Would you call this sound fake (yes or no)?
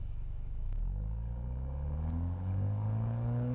yes